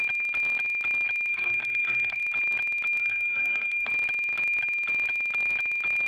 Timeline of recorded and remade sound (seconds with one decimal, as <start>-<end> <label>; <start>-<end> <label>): 0.0-1.3 recorded; 1.3-2.2 remade; 2.2-3.0 recorded; 3.0-3.9 remade; 3.9-6.1 recorded